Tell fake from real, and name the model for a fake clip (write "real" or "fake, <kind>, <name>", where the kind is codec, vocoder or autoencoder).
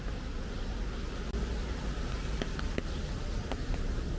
real